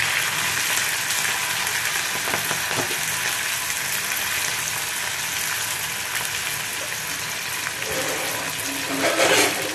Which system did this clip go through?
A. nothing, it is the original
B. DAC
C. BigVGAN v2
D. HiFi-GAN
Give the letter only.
A